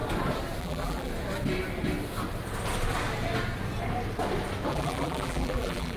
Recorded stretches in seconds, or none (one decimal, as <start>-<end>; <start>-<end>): 0.0-0.6; 1.1-4.7